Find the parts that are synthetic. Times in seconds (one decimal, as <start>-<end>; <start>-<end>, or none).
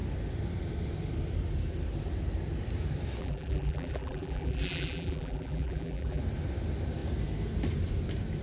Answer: 3.2-6.2